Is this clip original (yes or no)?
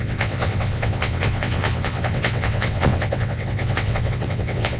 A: no